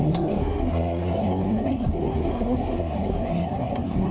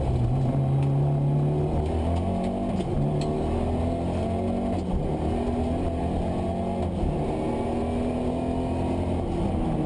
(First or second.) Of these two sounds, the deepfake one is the first